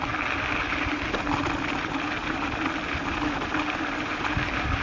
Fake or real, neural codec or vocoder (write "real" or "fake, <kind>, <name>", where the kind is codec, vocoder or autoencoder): real